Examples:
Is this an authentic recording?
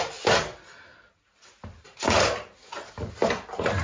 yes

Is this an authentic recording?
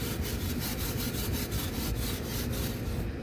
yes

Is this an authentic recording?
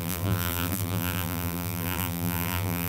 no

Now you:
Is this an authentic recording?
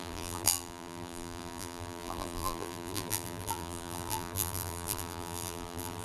no